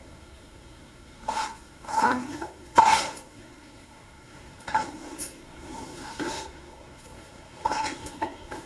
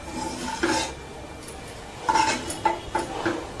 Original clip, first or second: second